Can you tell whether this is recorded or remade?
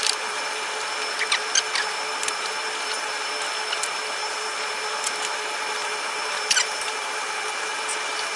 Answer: remade